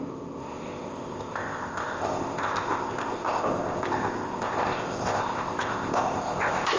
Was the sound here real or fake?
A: fake